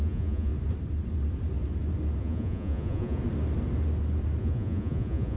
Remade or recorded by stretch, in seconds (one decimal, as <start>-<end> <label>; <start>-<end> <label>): 0.0-0.5 remade; 0.5-2.2 recorded; 2.2-3.2 remade; 3.2-4.4 recorded; 4.4-5.4 remade